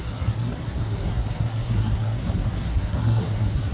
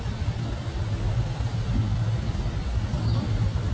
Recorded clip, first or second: second